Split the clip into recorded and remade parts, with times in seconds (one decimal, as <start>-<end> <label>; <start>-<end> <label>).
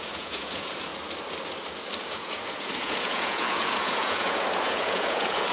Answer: 0.0-0.9 remade; 0.9-2.0 recorded; 2.0-5.5 remade